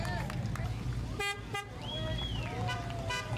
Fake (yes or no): no